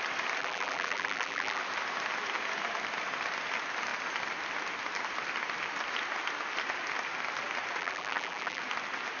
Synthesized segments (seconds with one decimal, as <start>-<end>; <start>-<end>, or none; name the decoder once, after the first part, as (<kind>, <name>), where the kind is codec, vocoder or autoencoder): 0.4-1.6 (vocoder, BigVGAN v2); 7.8-8.6